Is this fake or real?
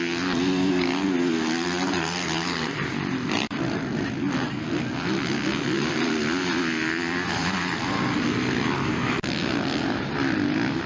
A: real